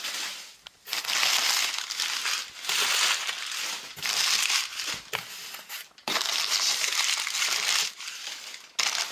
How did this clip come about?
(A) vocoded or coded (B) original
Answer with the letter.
B